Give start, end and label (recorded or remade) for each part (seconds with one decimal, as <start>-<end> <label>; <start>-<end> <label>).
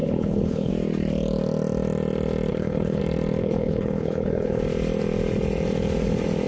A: 0.0-0.7 remade; 0.7-2.5 recorded; 2.5-3.0 remade; 3.0-3.4 recorded; 3.4-4.6 remade; 4.6-6.5 recorded